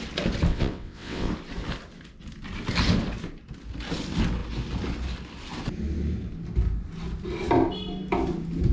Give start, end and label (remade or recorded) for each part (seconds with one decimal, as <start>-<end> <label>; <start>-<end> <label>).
0.0-0.5 recorded; 0.5-1.3 remade; 1.3-8.7 recorded